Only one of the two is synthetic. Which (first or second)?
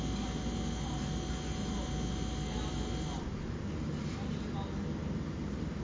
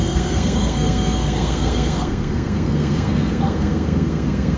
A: second